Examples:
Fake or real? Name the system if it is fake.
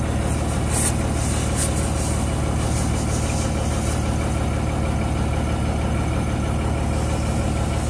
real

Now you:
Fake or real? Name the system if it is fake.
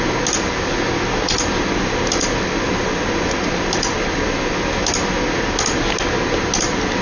real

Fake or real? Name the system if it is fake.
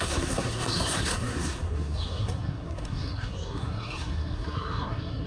fake, codec, SNAC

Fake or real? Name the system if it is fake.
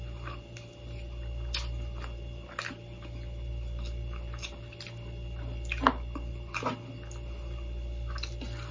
real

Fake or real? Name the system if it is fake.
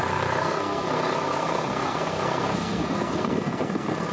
fake, codec, SNAC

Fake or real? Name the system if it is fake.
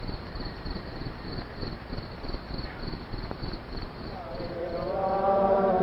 fake, vocoder, BigVGAN v2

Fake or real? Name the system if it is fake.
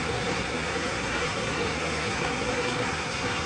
fake, codec, SNAC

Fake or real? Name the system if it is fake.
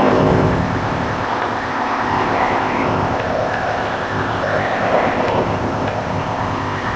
fake, codec, ZipCodec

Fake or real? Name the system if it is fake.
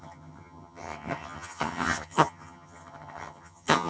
fake, vocoder, HiFi-GAN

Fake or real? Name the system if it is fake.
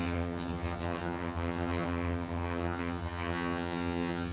fake, vocoder, HiFi-GAN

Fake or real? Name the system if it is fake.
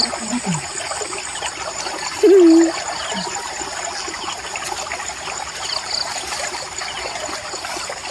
real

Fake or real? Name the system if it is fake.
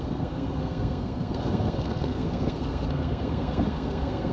fake, codec, SNAC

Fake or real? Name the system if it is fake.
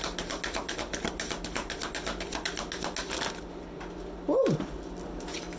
real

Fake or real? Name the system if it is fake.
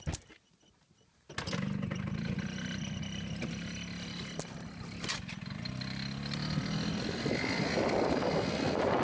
real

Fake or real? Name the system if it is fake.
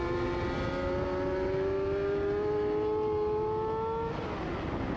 real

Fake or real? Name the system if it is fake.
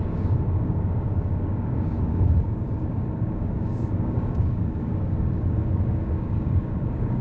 fake, codec, DAC